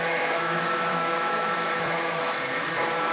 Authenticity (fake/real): fake